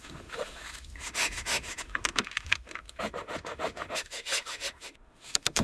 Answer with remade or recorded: remade